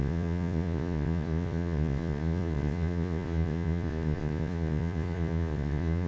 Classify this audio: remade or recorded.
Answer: remade